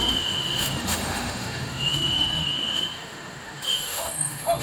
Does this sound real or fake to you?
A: fake